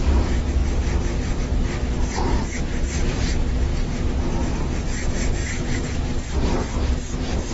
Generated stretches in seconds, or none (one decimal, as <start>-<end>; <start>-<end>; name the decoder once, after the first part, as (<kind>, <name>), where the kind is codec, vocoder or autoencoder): 5.4-5.9 (vocoder, Vocos)

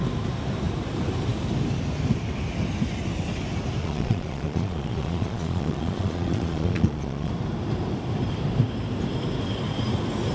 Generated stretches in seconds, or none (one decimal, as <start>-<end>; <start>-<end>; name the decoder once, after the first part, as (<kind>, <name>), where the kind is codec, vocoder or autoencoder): 3.8-7.3 (vocoder, Vocos)

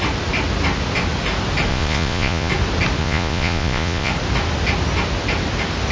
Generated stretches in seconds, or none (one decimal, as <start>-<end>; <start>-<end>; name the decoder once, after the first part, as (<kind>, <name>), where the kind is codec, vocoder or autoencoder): 1.7-2.5 (vocoder, Vocos); 3.0-4.1

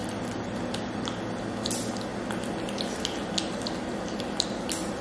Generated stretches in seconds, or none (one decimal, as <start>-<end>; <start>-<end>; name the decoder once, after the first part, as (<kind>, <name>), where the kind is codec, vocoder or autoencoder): none

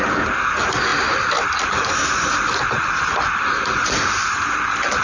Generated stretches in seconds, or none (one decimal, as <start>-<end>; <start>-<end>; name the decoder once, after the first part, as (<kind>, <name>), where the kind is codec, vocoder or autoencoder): none